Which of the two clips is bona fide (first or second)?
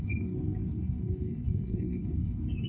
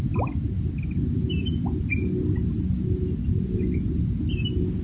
second